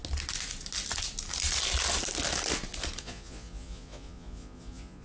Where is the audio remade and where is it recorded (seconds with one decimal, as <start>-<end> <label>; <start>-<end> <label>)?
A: 0.0-3.0 recorded; 3.0-5.0 remade